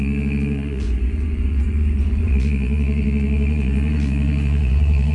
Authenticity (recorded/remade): remade